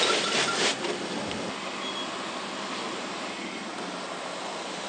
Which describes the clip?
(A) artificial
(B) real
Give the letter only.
B